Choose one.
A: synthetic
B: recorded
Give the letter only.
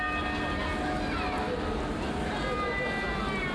B